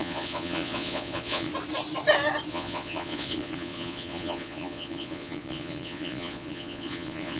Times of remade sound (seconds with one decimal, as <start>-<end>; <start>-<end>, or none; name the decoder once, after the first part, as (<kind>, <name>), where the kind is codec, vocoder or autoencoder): 0.0-1.5 (vocoder, Vocos); 2.5-7.4